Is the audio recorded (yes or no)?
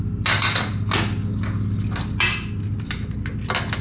yes